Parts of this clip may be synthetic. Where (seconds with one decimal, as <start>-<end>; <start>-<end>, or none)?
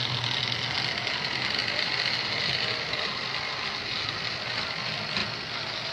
none